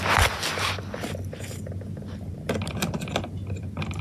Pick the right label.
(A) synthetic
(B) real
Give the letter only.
B